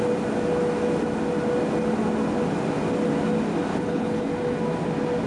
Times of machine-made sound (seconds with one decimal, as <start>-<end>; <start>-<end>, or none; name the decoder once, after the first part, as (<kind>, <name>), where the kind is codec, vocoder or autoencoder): 3.7-4.2 (codec, HILCodec)